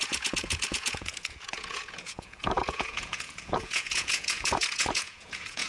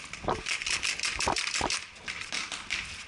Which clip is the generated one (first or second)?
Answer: first